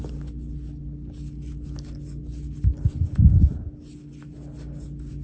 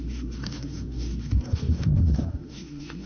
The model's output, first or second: second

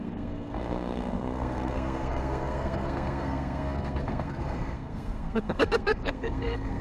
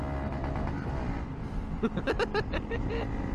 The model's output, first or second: first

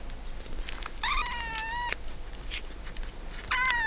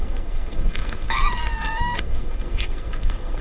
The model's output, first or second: second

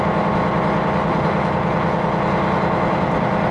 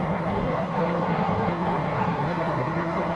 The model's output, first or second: second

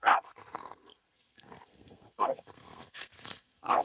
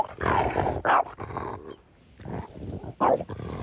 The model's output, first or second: first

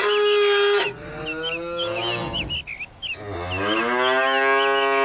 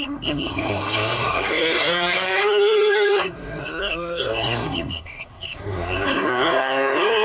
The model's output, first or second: second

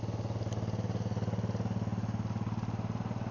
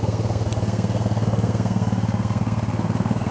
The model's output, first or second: second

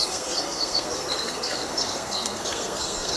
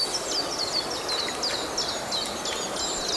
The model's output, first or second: first